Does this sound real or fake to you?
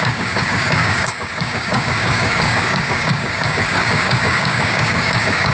fake